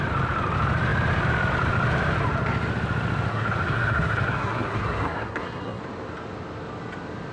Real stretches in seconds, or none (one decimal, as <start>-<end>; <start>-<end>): 0.0-3.3; 5.8-7.3